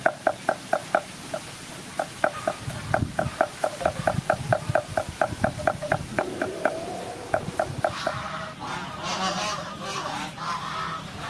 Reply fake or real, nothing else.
fake